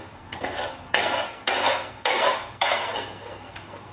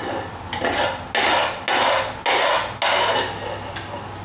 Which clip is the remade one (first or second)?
first